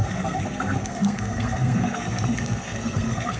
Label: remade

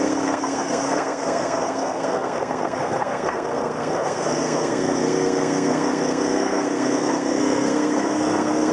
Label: remade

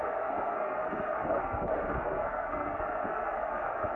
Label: remade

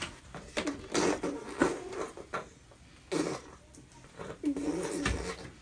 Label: recorded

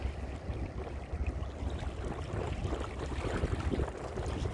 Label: recorded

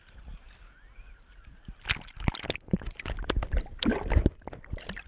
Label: recorded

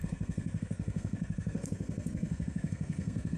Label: remade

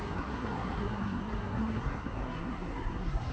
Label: remade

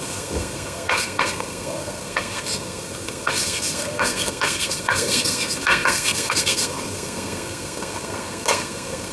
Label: remade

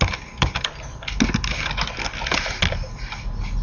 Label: recorded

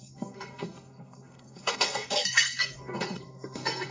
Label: remade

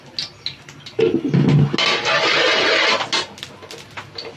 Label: recorded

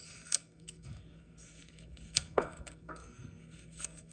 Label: remade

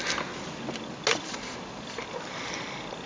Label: recorded